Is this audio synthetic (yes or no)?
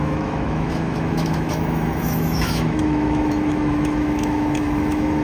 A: yes